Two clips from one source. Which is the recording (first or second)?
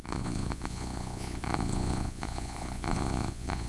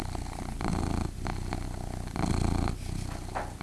second